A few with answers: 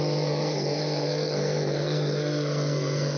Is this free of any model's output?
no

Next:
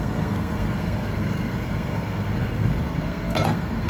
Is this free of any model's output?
no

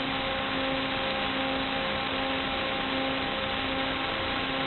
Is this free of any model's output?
yes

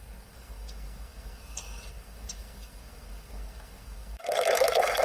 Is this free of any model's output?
no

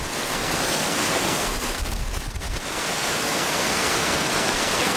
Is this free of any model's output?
no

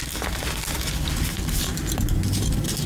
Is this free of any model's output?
yes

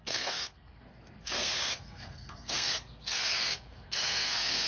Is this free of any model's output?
no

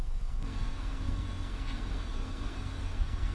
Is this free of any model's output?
no